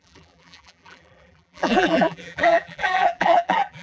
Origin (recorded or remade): remade